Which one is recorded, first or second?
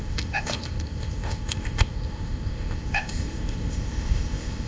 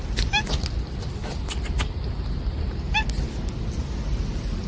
second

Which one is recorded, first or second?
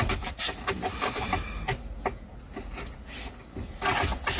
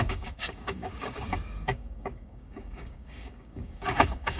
first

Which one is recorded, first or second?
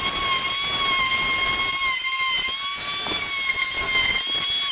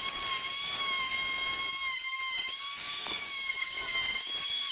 first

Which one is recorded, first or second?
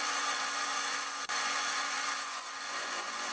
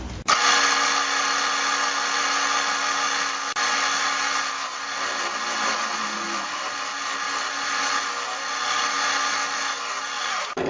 second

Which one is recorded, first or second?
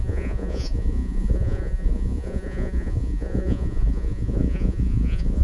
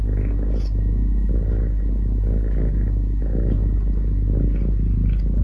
second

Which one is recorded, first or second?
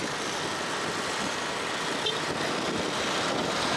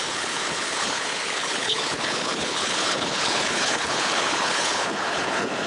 first